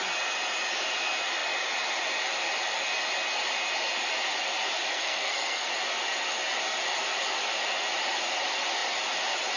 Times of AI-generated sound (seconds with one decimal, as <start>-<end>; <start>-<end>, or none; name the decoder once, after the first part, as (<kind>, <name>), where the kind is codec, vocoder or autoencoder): 4.9-5.7 (codec, SNAC)